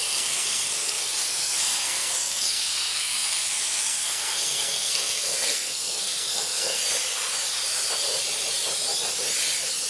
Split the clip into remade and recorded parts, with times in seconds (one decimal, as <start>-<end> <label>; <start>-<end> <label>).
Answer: 0.0-6.8 remade; 6.8-9.9 recorded

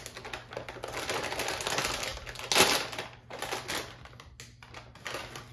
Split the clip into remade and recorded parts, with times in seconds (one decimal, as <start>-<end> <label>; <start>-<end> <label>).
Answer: 0.0-5.5 recorded

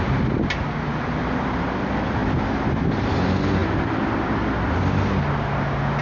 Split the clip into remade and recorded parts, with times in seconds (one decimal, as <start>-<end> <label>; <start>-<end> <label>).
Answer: 0.0-6.0 recorded

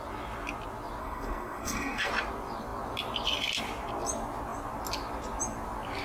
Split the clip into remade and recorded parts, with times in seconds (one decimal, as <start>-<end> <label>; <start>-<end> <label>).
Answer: 0.0-1.0 recorded; 1.0-2.1 remade; 2.1-6.0 recorded

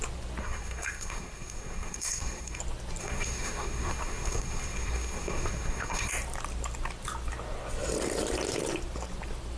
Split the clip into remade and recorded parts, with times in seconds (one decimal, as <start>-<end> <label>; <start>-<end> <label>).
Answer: 0.0-0.4 recorded; 0.4-2.6 remade; 2.6-3.0 recorded; 3.0-6.1 remade; 6.1-9.6 recorded